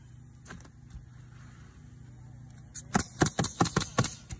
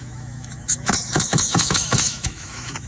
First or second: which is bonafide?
first